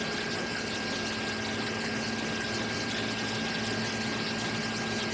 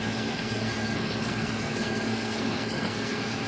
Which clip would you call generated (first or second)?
second